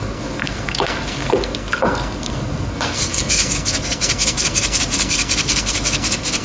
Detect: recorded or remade remade